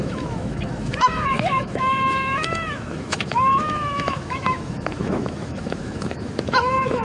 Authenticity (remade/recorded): remade